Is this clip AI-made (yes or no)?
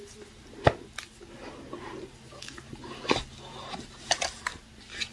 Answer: no